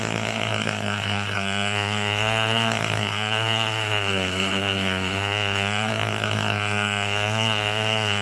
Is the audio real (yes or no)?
no